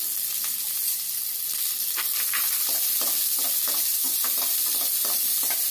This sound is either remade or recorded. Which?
recorded